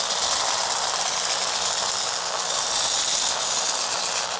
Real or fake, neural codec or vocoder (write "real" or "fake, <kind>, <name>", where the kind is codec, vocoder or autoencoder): real